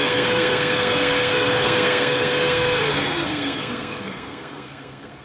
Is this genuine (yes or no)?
no